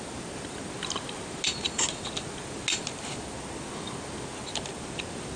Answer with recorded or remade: recorded